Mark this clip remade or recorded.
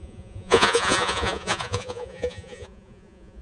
remade